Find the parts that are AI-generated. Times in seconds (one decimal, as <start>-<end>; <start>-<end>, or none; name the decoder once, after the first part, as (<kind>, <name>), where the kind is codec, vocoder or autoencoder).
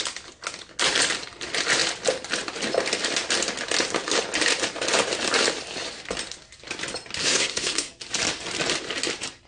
7.2-7.9 (codec, SNAC)